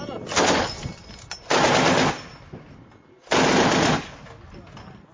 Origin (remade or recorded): recorded